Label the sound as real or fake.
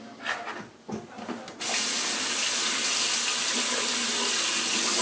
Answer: real